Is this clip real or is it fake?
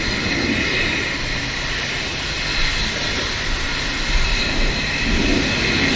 real